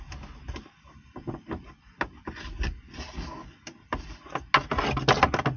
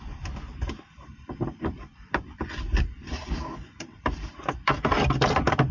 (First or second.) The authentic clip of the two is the first